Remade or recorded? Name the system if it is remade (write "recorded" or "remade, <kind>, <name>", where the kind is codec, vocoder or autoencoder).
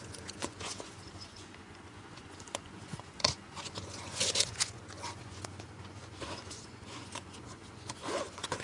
remade, vocoder, Vocos